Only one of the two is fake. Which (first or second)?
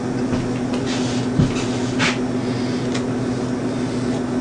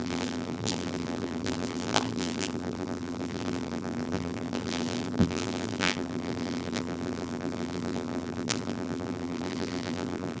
second